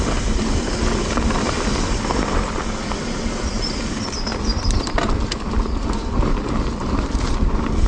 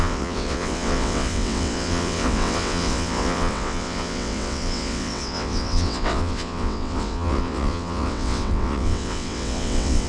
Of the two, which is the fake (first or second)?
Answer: second